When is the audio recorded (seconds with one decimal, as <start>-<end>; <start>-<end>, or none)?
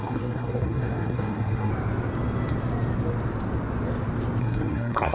1.7-4.4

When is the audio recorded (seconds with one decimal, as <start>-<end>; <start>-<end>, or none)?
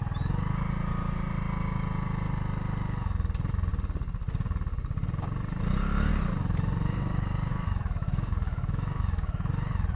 0.0-7.5; 9.5-10.0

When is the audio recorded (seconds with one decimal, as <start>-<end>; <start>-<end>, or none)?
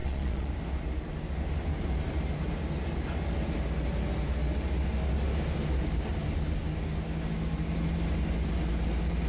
0.5-9.3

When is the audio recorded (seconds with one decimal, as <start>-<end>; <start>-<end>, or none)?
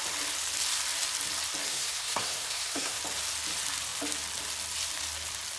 0.0-1.7; 3.0-5.6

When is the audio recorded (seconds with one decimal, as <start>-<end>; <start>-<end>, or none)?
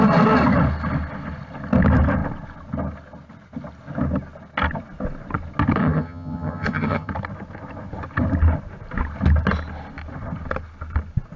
0.0-5.8; 7.1-11.4